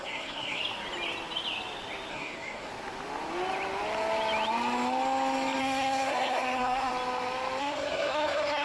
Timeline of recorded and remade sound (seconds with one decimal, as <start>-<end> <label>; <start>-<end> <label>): 0.0-0.6 remade; 0.6-2.1 recorded; 2.1-2.7 remade; 2.7-5.6 recorded; 5.6-6.9 remade; 6.9-7.6 recorded; 7.6-8.6 remade